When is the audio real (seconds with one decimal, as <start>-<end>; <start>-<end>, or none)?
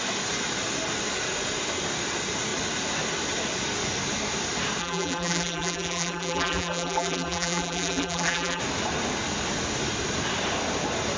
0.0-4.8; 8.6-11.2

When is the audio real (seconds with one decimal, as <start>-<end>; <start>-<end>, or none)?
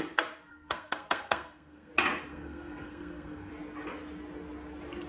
0.0-0.5; 1.9-2.3; 3.5-5.1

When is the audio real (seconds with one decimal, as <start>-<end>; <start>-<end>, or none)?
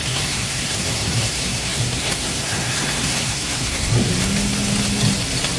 4.1-5.6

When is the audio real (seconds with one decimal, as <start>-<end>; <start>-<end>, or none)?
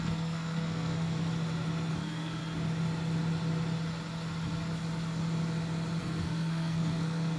1.3-1.9; 2.4-6.0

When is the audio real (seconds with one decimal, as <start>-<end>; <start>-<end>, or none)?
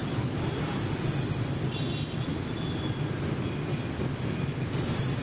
0.0-5.2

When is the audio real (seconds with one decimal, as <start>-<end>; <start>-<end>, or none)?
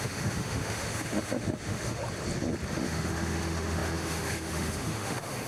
2.0-2.7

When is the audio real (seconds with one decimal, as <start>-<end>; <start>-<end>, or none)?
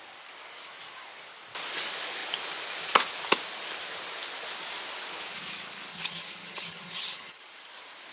0.0-5.9; 7.4-8.1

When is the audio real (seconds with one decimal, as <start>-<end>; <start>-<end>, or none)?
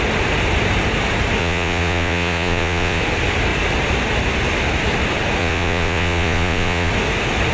0.0-1.4; 3.0-5.4; 6.9-7.5